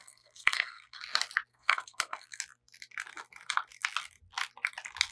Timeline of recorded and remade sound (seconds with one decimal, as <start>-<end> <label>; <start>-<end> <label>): 0.0-1.0 remade; 1.0-1.5 recorded; 1.5-2.4 remade; 2.4-5.1 recorded